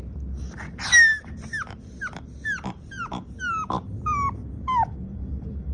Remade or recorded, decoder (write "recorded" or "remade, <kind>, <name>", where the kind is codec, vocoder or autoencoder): recorded